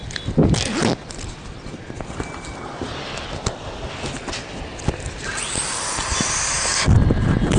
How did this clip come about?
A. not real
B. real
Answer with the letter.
B